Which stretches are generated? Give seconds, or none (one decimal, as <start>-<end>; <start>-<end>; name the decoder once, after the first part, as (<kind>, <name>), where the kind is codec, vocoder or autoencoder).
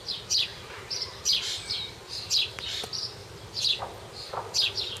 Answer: 0.5-2.3 (vocoder, BigVGAN v2); 3.2-3.8